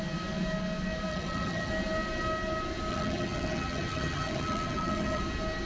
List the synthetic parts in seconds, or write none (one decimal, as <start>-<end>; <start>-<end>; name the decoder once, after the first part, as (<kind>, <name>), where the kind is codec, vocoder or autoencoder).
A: 1.1-1.7 (vocoder, HiFi-GAN); 2.9-5.2